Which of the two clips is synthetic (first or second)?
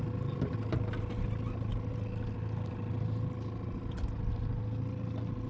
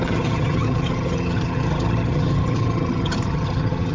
second